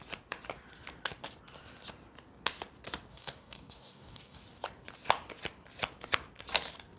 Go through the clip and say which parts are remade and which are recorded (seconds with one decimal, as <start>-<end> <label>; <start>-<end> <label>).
0.0-3.1 recorded; 3.1-4.4 remade; 4.4-7.0 recorded